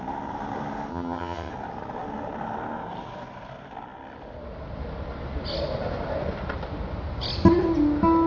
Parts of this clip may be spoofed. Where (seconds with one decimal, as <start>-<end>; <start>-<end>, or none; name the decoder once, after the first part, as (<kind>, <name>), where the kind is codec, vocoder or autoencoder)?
0.9-1.5 (vocoder, HiFi-GAN)